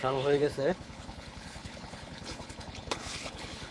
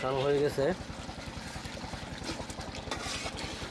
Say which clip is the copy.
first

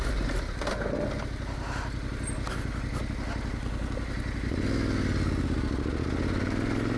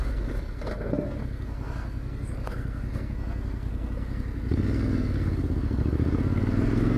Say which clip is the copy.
second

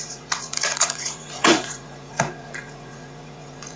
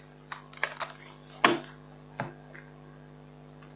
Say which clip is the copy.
first